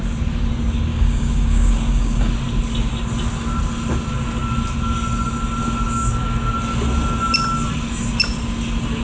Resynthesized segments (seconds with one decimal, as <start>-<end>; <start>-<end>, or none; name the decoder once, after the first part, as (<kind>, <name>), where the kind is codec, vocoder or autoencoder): 0.9-2.3 (codec, DAC)